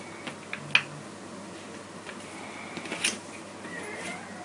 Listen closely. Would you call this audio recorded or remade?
recorded